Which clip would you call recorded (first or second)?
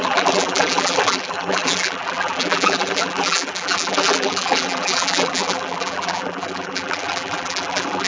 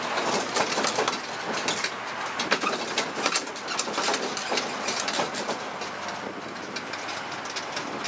second